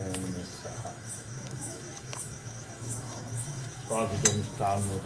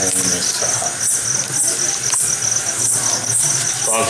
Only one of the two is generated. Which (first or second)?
first